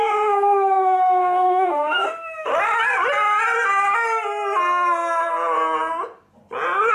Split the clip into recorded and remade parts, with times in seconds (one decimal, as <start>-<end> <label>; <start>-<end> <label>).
0.0-2.5 remade; 2.5-6.9 recorded